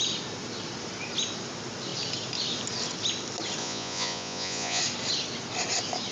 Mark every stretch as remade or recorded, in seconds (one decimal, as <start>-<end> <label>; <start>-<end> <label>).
0.0-3.6 recorded; 3.6-4.8 remade; 4.8-6.1 recorded